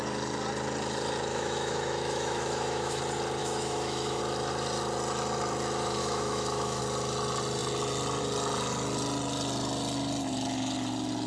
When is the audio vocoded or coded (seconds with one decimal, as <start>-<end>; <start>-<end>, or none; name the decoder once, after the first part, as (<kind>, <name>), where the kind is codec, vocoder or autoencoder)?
1.3-3.0 (autoencoder, DAC-VAE); 3.4-4.2; 6.0-6.8